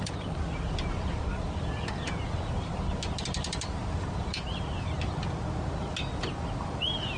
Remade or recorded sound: recorded